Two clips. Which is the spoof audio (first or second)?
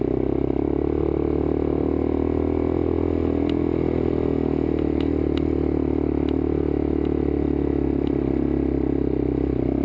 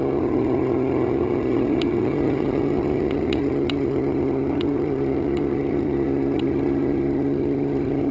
second